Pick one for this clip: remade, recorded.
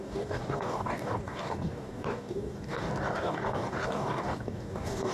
remade